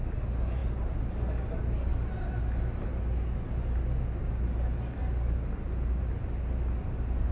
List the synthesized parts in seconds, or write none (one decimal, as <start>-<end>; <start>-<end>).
none